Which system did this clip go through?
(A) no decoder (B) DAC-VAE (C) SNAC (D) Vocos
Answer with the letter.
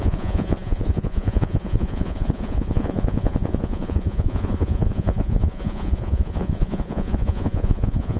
D